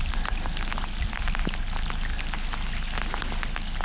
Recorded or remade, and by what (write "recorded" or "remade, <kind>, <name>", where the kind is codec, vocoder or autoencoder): recorded